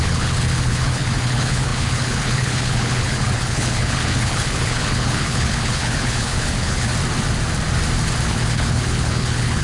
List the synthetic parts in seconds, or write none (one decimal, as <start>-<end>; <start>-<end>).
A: 0.0-6.9; 8.3-9.6